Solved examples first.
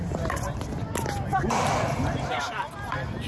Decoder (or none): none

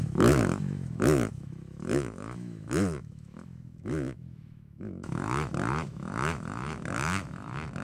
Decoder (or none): autoencoder, DAC-VAE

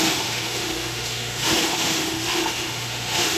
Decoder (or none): autoencoder, DAC-VAE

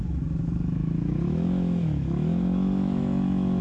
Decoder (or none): autoencoder, DAC-VAE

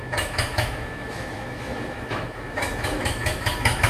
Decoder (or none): autoencoder, DAC-VAE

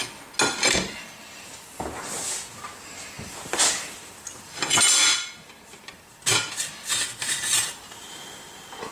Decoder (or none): none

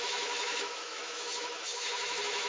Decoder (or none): autoencoder, DAC-VAE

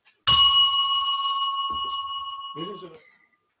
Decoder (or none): none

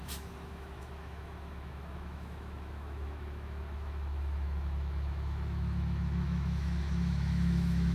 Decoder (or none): autoencoder, DAC-VAE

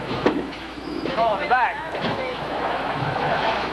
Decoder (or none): autoencoder, DAC-VAE